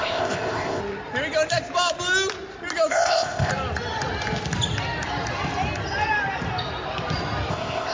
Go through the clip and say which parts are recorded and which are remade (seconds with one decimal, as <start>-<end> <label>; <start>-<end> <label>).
0.0-0.8 remade; 0.8-2.9 recorded; 2.9-3.5 remade; 3.5-7.5 recorded; 7.5-7.9 remade